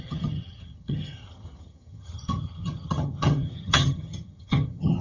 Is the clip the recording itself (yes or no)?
no